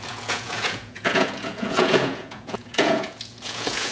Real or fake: fake